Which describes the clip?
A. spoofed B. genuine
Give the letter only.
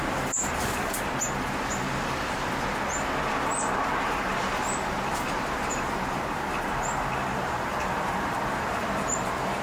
A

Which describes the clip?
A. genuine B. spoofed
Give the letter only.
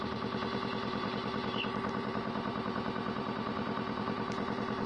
B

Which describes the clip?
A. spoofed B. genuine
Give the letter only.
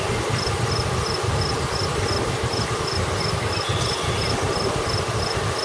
B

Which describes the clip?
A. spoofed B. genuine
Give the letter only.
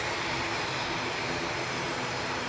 A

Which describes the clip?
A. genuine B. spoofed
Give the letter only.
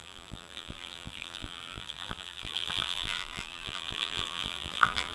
B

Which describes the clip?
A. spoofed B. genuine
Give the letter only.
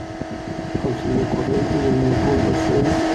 A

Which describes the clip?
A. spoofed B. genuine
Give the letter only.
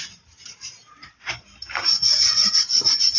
A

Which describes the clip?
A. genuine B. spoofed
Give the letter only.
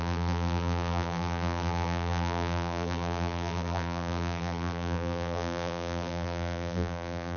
B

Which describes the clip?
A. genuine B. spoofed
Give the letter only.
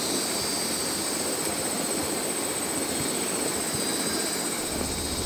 A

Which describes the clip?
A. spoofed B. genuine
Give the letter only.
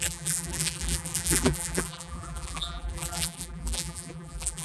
A